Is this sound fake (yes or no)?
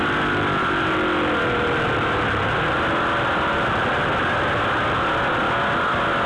no